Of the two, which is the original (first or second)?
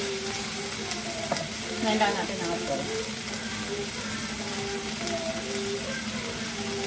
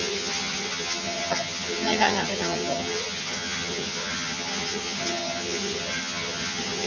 first